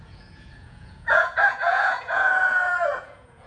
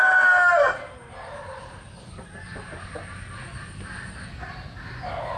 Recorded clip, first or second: second